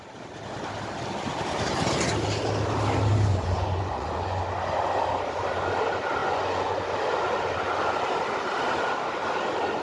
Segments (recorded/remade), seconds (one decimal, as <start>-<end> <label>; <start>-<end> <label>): 0.0-3.3 recorded; 3.3-4.4 remade; 4.4-6.2 recorded; 6.2-6.8 remade; 6.8-9.8 recorded